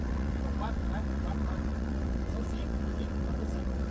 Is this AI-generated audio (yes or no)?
yes